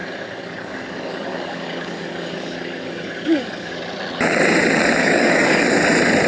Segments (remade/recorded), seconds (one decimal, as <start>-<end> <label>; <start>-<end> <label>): 0.0-3.8 remade; 3.8-5.0 recorded; 5.0-5.6 remade; 5.6-6.3 recorded